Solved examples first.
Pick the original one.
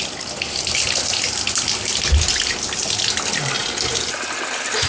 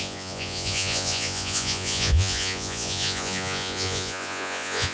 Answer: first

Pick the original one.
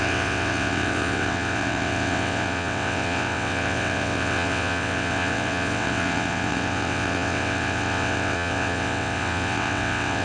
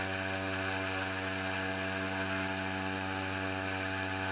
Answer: second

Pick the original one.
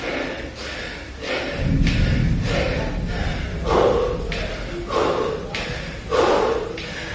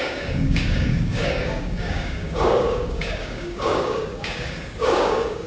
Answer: first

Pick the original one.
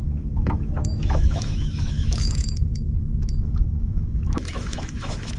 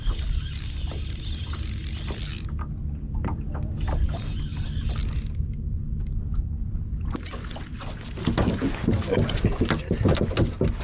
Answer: second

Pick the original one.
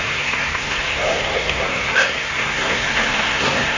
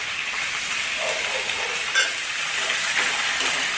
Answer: second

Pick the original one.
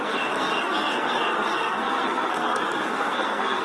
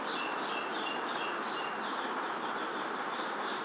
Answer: second